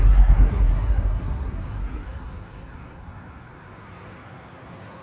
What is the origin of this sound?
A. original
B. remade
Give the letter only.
B